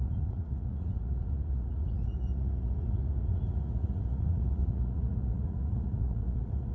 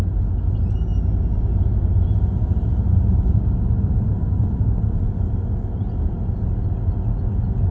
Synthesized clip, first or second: first